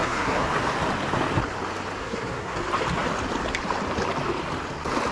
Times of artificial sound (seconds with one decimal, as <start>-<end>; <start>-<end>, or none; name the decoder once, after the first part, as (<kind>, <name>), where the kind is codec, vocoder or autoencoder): 0.0-0.5 (codec, SNAC); 2.0-2.6